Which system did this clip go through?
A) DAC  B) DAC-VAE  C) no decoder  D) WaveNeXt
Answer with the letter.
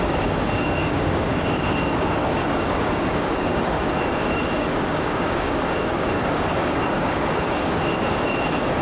A